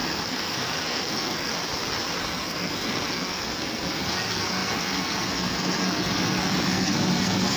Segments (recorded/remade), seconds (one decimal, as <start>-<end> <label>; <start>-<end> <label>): 0.0-1.5 remade; 1.5-2.2 recorded; 2.2-7.6 remade